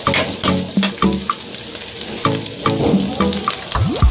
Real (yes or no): yes